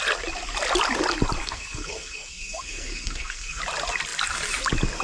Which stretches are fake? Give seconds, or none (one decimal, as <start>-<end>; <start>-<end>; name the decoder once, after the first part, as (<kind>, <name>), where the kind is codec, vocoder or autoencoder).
1.4-3.6 (codec, SNAC)